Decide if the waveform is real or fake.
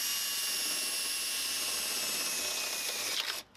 real